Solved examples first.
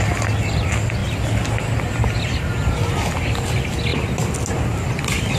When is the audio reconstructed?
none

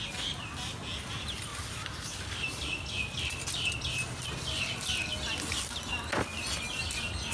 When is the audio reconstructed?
none

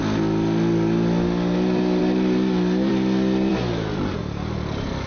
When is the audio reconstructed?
none

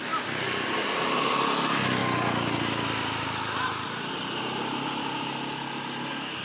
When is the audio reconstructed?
none

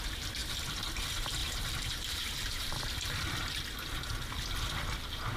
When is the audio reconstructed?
1.4-2.7 (vocoder, BigVGAN v2)

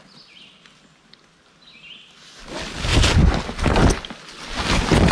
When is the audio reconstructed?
none

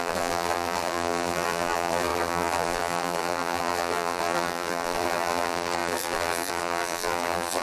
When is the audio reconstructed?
0.0-7.6 (vocoder, BigVGAN v2)